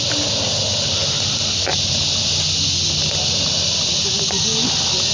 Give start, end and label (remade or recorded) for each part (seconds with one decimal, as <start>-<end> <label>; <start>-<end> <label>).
0.0-5.1 recorded